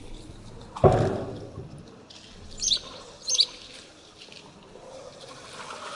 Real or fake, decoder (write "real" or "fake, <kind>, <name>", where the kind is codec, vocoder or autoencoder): real